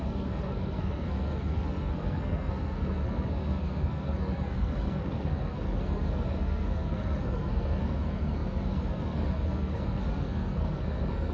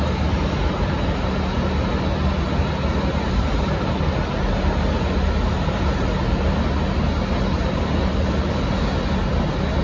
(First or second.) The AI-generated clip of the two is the first